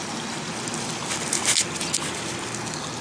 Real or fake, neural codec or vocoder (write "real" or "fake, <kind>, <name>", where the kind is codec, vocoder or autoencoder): real